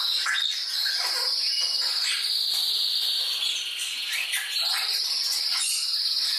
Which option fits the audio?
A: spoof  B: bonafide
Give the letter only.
B